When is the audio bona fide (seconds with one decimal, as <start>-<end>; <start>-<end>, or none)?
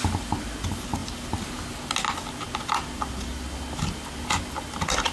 0.0-5.1